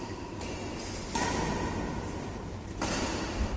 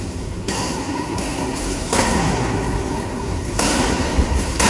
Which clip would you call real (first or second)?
first